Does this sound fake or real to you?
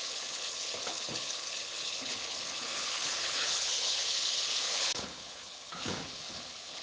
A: fake